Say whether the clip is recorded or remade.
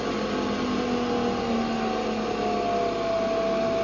recorded